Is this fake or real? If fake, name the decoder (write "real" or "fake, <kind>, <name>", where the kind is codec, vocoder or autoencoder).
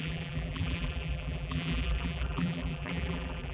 fake, vocoder, BigVGAN v2